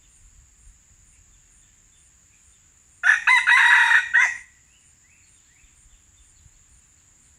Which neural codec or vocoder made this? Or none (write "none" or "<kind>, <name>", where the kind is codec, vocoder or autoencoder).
none